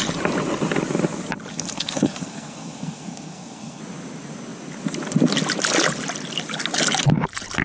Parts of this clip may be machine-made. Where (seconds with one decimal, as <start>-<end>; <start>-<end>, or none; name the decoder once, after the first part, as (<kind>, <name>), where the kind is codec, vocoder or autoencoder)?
1.5-3.8 (codec, SNAC)